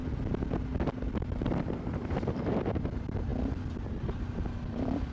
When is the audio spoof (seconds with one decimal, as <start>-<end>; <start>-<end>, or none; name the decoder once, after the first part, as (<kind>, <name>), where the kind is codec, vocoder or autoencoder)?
1.1-5.1 (vocoder, BigVGAN v2)